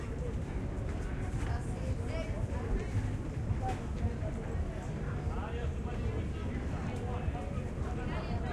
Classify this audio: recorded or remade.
recorded